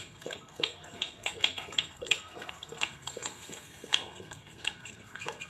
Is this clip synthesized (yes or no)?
yes